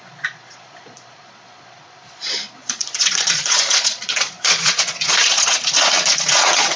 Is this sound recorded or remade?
remade